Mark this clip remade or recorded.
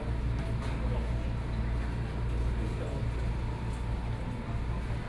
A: recorded